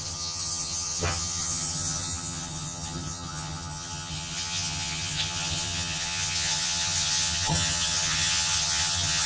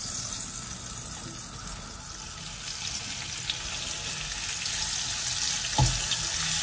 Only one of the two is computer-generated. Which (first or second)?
first